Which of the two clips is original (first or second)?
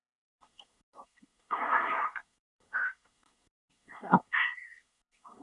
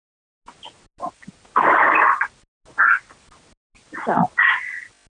second